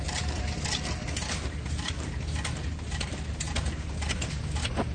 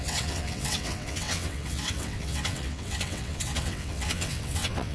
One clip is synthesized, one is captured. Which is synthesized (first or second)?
second